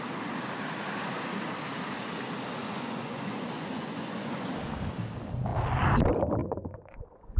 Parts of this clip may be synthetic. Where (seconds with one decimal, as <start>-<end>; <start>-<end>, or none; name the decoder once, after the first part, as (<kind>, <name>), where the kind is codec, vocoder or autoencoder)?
2.6-4.5 (vocoder, Vocos); 6.4-7.4